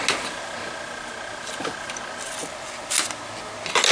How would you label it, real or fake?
real